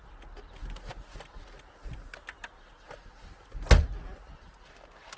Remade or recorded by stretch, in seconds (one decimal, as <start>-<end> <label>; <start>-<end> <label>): 0.0-5.2 recorded